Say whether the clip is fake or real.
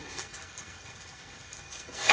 fake